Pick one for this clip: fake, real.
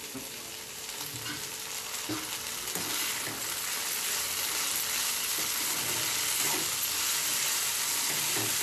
real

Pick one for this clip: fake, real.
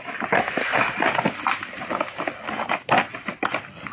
real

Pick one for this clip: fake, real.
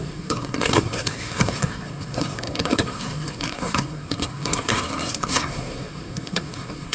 fake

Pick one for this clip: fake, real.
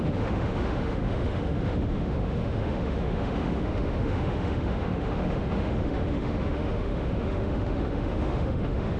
fake